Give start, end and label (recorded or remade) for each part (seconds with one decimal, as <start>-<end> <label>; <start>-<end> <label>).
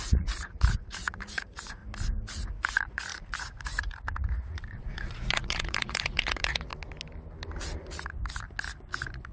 0.0-1.8 remade; 1.8-2.5 recorded; 2.5-6.7 remade; 6.7-9.3 recorded